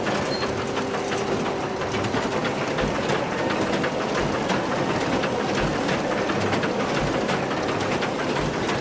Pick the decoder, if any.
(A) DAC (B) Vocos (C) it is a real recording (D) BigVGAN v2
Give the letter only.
C